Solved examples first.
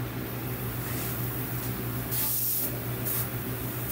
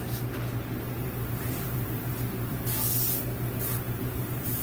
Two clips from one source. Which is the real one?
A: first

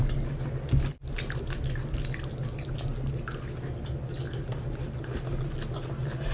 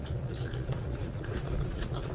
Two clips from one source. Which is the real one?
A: first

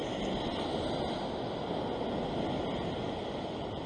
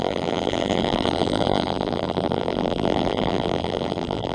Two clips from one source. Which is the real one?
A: first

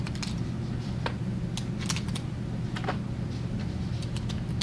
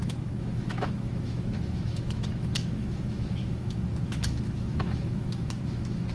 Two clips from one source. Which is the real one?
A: first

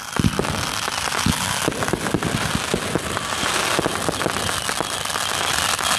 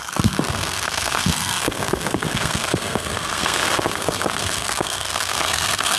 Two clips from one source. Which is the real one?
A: first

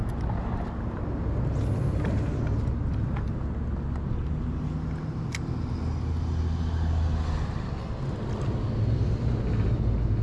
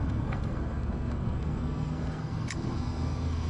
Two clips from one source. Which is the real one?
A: first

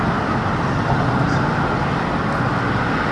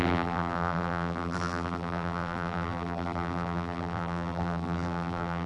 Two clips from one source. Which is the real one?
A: first